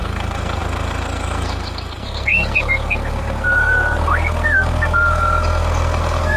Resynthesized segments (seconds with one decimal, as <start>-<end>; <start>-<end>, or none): 0.0-6.4